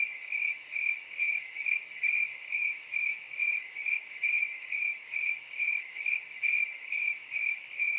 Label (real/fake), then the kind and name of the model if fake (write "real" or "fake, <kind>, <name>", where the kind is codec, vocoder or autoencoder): fake, codec, DAC